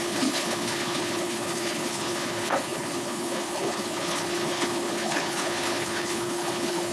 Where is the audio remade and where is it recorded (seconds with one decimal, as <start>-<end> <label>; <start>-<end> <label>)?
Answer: 0.0-6.9 remade